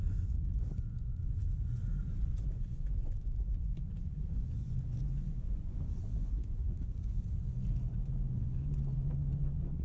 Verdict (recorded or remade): remade